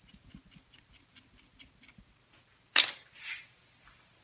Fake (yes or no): no